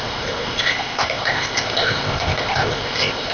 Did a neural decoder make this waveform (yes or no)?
yes